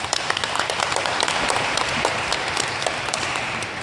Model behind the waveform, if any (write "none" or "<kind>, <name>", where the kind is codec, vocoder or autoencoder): vocoder, BigVGAN v2